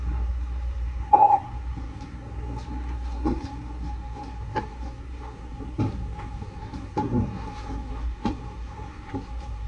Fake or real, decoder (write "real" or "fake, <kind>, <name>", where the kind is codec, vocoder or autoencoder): fake, codec, SNAC